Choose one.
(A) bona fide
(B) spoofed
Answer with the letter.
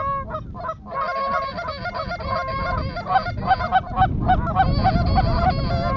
A